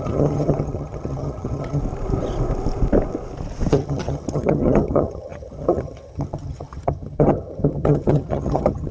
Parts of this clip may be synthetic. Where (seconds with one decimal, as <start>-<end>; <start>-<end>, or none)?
0.0-1.8; 3.7-8.9